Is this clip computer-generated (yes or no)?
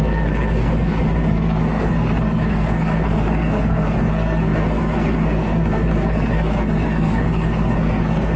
yes